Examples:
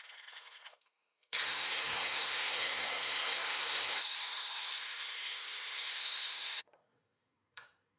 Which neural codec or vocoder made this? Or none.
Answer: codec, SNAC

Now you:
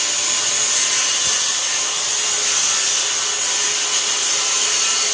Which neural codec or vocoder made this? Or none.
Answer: none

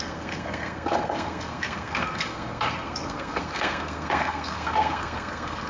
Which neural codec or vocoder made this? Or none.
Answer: codec, SNAC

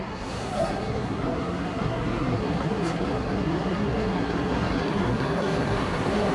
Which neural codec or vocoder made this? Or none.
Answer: codec, SNAC